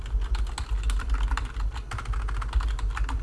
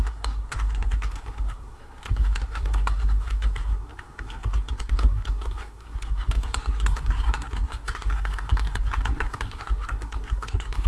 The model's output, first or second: second